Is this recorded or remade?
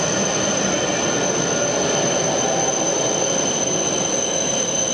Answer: recorded